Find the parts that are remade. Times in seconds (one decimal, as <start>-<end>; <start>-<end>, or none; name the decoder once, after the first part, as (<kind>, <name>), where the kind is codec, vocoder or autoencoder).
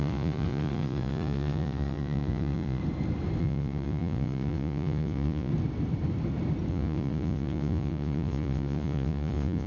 0.0-2.8 (vocoder, Vocos); 3.4-5.5; 6.7-9.7